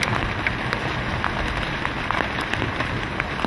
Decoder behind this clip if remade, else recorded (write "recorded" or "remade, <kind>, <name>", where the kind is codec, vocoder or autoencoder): recorded